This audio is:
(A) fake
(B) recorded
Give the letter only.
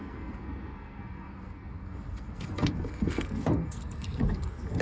A